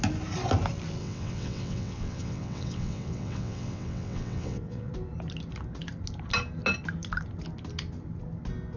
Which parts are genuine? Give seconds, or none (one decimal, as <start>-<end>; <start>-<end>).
0.0-1.0; 4.9-8.8